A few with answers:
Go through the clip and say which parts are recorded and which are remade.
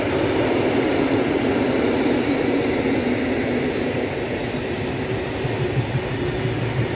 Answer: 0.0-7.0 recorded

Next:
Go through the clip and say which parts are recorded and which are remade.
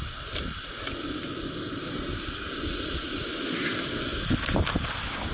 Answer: 0.0-5.3 recorded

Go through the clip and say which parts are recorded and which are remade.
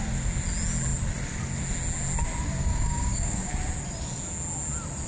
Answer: 0.0-2.7 recorded; 2.7-3.5 remade; 3.5-5.1 recorded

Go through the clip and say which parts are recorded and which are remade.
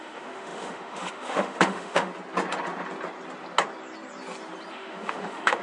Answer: 0.0-2.1 remade; 2.1-4.7 recorded; 4.7-5.6 remade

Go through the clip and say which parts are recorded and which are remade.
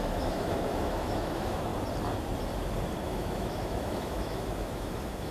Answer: 0.0-1.7 remade; 1.7-3.0 recorded; 3.0-5.3 remade